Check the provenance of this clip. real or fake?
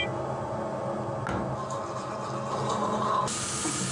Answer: real